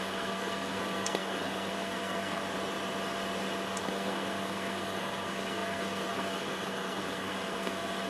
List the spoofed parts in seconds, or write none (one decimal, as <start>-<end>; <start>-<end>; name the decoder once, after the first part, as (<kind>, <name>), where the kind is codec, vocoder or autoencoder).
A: 0.0-2.4 (codec, SNAC); 3.8-8.1